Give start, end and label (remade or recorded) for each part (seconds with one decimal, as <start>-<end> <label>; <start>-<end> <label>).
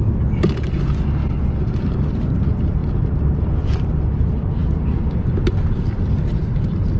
0.0-7.0 recorded